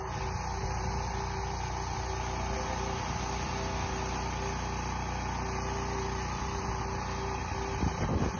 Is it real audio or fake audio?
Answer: real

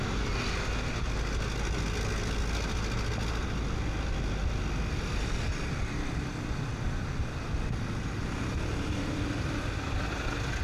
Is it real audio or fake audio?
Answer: real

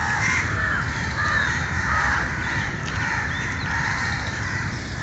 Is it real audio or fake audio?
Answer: fake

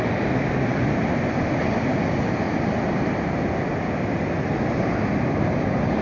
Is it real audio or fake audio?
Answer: real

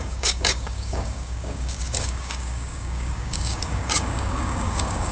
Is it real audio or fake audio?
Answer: fake